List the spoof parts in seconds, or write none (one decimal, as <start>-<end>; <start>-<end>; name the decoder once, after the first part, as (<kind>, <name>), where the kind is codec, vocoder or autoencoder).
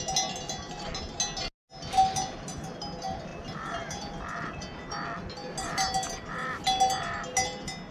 none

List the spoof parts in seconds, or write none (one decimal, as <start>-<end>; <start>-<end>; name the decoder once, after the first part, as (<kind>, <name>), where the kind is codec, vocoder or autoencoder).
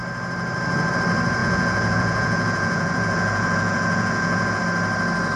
1.4-4.6 (vocoder, Vocos)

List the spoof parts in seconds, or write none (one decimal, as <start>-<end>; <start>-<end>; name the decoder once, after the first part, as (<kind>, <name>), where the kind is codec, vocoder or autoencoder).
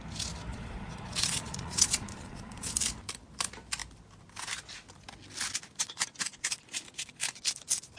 0.5-2.7 (vocoder, Vocos)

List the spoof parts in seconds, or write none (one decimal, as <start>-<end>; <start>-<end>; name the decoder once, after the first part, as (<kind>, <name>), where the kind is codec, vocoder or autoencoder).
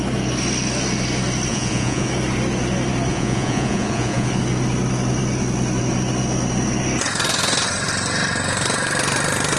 1.5-2.1 (vocoder, Vocos); 3.1-4.4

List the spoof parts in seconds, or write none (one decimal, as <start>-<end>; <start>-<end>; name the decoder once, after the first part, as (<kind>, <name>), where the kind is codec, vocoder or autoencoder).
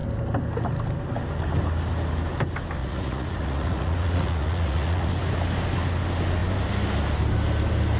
2.8-5.1 (vocoder, Vocos)